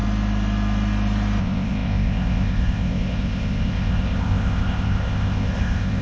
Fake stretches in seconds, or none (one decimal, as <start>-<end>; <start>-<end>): 1.4-6.0